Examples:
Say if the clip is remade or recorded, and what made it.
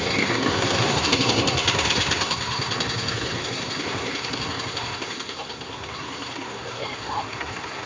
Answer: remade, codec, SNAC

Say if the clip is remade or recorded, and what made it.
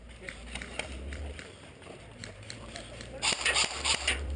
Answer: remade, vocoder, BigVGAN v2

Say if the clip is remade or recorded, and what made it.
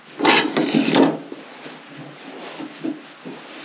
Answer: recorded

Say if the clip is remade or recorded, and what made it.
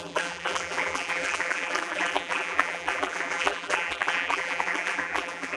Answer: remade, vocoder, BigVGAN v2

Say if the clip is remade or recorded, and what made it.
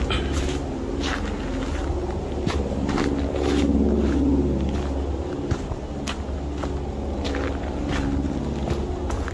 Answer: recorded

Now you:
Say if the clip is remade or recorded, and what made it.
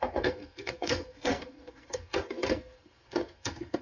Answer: remade, codec, SNAC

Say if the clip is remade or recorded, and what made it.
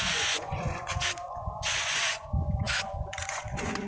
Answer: remade, vocoder, Vocos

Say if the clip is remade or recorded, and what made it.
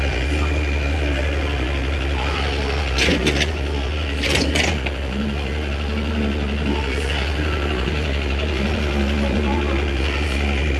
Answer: remade, vocoder, Vocos